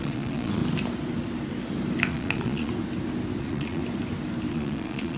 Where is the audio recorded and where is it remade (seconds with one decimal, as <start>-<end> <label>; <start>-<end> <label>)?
0.0-0.6 remade; 0.6-2.1 recorded; 2.1-2.7 remade; 2.7-3.4 recorded; 3.4-3.8 remade; 3.8-4.5 recorded; 4.5-5.2 remade